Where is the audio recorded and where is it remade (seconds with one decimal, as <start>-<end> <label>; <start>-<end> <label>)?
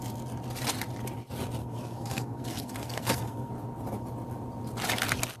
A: 0.0-1.6 recorded; 1.6-3.5 remade; 3.5-5.4 recorded